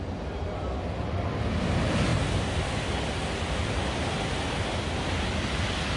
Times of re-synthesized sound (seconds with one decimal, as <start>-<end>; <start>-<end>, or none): none